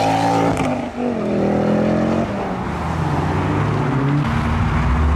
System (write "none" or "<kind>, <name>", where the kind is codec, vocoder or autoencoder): none